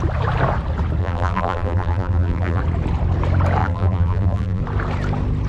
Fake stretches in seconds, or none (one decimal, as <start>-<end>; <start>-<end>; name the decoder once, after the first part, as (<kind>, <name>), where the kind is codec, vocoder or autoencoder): 1.0-2.6 (vocoder, BigVGAN v2); 3.6-4.6